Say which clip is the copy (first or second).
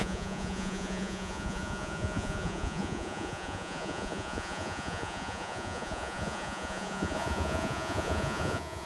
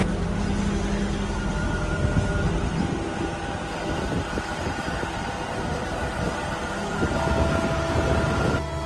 first